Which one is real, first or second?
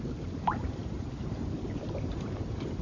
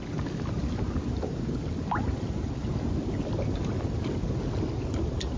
second